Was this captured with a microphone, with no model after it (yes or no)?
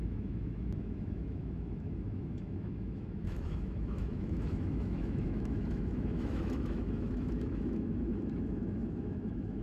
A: no